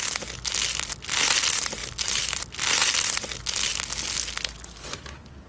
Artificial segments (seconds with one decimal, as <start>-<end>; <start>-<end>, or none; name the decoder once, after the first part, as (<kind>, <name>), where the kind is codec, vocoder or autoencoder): 1.8-2.4 (vocoder, BigVGAN v2)